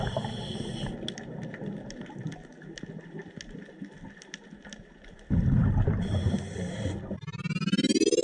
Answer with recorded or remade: recorded